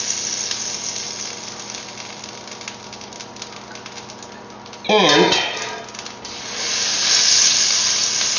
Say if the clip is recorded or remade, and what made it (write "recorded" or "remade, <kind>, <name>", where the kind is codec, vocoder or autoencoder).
recorded